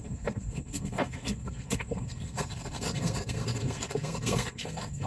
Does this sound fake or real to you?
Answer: fake